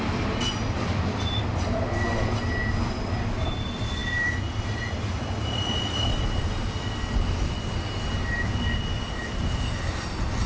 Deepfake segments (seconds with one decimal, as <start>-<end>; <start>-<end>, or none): 4.0-4.6